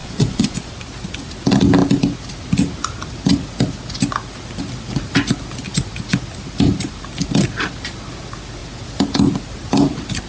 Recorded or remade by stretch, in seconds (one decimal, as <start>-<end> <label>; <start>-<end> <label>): 0.0-0.7 remade; 0.7-10.3 recorded